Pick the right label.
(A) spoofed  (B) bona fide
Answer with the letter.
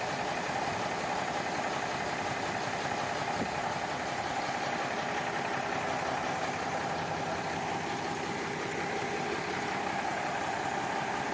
B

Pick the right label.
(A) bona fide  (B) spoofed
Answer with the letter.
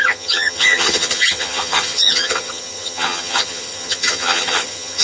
B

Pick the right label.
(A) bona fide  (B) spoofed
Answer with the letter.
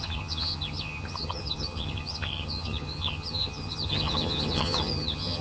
B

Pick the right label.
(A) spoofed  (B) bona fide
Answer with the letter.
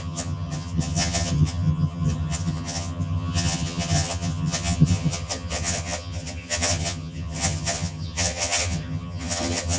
A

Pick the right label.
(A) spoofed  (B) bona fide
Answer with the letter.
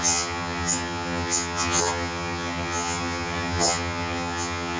A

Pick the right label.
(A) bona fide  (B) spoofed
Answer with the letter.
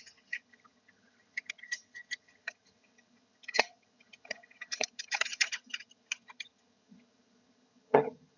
B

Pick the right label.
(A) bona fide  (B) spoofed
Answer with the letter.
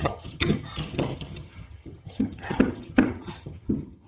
B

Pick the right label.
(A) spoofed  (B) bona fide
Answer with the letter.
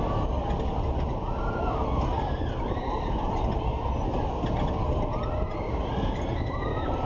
B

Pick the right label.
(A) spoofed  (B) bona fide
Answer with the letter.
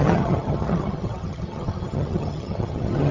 A